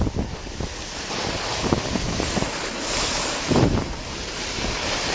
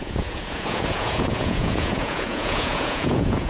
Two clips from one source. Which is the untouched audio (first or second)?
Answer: first